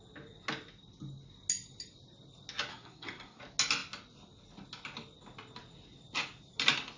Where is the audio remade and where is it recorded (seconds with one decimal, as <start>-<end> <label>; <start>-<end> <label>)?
0.0-2.7 recorded; 2.7-3.4 remade; 3.4-7.0 recorded